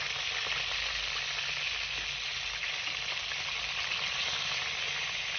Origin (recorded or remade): recorded